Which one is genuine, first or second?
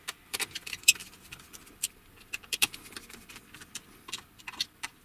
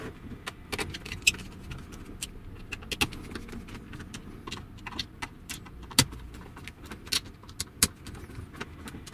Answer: second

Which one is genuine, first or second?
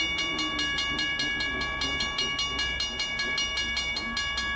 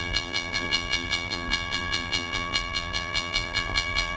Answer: first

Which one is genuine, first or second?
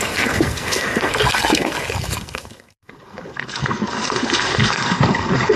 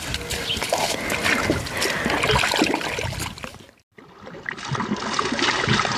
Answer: second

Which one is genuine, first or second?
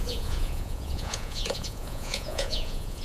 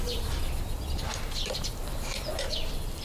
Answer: second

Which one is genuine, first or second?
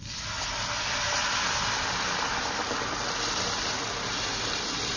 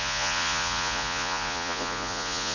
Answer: first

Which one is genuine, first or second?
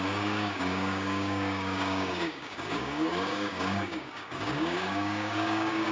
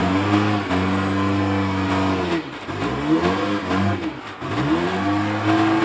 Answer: second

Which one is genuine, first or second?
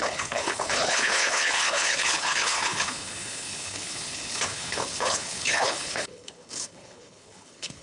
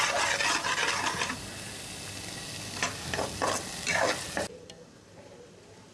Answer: second